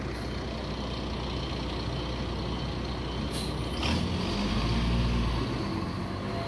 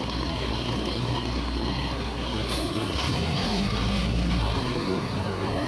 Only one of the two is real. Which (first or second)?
first